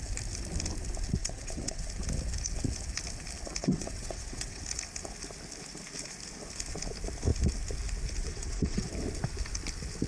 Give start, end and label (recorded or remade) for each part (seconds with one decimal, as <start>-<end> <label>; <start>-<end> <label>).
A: 0.0-1.2 recorded; 1.2-1.9 remade; 1.9-3.6 recorded; 3.6-4.6 remade; 4.6-8.2 recorded; 8.2-8.9 remade; 8.9-10.1 recorded

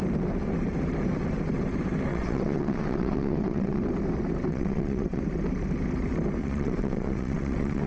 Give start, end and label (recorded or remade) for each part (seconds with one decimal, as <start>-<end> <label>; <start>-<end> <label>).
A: 0.0-2.1 recorded; 2.1-3.8 remade; 3.8-4.5 recorded; 4.5-5.2 remade; 5.2-6.4 recorded; 6.4-7.9 remade

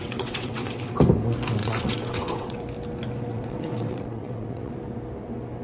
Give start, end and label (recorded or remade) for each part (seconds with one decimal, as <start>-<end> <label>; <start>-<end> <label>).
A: 0.0-0.9 remade; 0.9-1.6 recorded; 1.6-2.6 remade; 2.6-3.3 recorded; 3.3-4.7 remade; 4.7-5.6 recorded